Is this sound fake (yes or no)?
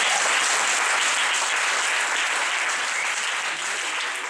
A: no